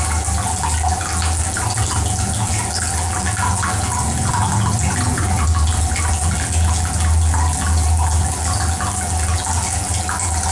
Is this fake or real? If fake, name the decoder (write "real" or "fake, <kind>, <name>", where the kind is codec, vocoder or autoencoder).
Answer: fake, vocoder, BigVGAN v2